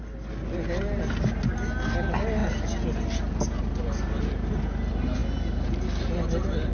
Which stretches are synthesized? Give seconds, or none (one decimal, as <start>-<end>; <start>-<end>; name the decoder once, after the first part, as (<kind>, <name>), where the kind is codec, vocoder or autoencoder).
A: none